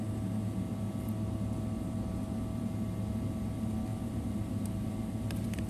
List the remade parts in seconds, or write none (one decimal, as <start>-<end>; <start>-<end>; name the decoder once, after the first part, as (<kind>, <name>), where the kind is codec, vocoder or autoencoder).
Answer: 3.9-4.9 (vocoder, BigVGAN v2)